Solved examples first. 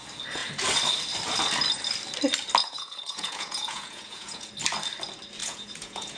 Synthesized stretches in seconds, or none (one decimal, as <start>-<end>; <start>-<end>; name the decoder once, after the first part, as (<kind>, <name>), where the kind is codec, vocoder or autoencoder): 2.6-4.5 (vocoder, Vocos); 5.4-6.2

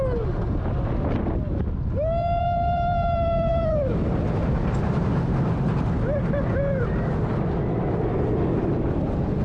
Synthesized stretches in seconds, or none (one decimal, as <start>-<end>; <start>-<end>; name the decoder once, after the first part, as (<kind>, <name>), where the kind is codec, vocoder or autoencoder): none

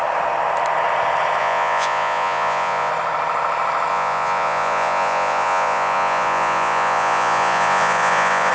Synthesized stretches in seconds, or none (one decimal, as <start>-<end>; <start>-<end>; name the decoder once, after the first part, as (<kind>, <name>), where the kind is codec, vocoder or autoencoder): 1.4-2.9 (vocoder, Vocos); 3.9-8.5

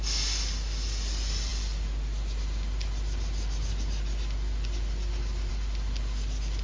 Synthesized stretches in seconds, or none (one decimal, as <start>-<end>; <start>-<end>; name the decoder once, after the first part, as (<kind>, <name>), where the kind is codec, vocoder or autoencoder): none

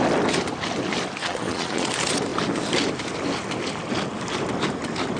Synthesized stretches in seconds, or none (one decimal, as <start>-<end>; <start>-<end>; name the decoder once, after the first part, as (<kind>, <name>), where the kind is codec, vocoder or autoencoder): 1.2-1.9 (vocoder, Vocos)